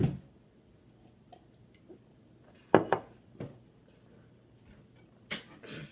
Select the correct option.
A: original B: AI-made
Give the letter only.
A